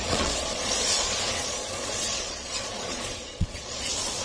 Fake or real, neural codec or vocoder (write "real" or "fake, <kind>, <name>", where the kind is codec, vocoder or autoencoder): fake, vocoder, Vocos